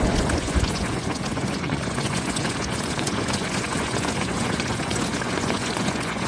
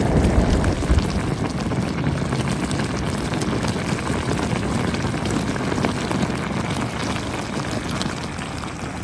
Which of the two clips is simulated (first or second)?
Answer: first